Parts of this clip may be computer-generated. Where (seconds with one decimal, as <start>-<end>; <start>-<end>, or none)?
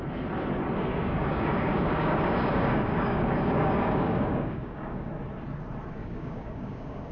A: 0.9-5.1; 6.0-7.1